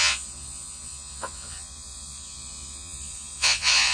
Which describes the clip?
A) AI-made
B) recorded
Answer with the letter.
A